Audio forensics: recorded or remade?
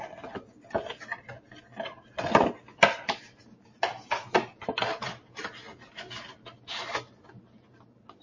recorded